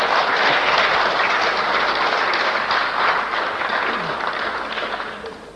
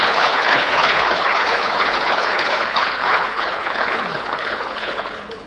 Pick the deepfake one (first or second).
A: second